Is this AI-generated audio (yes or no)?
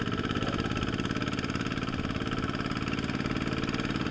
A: no